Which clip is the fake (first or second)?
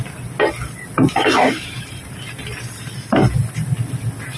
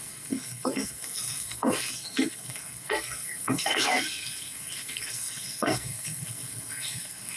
second